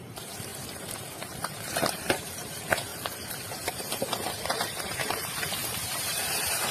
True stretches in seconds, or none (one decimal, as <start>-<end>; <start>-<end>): none